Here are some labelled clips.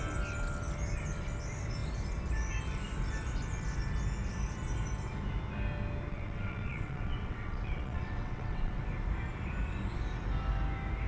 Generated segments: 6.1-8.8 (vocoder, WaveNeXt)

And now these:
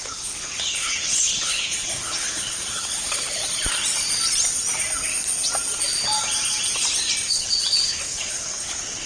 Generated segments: 0.0-3.4 (codec, HILCodec); 7.3-9.1

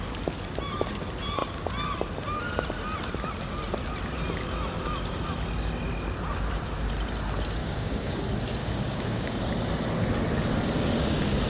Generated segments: 7.6-8.2 (codec, DAC); 8.6-9.5

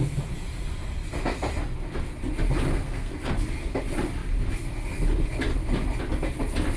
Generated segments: 2.7-3.3 (codec, SNAC)